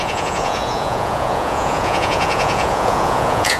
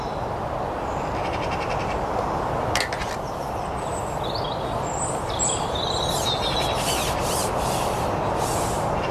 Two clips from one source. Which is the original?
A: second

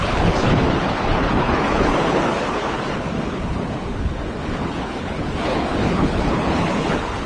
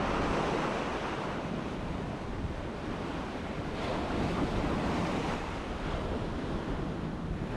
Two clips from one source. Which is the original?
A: second